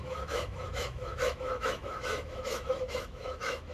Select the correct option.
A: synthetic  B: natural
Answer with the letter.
A